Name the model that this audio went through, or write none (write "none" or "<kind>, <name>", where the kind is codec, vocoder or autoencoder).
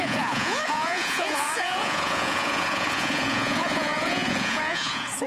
vocoder, Vocos